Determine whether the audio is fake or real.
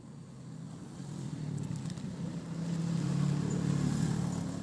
real